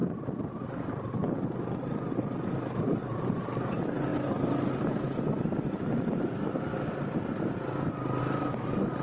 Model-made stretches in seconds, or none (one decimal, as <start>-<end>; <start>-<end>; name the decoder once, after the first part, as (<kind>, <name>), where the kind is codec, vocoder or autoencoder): none